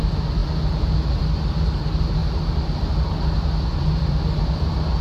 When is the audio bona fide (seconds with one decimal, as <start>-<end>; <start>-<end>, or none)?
0.0-5.0